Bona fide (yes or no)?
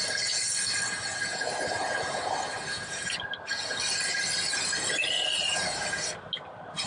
yes